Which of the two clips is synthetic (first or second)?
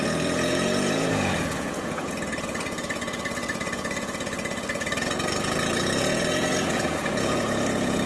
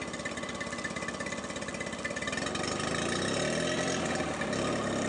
first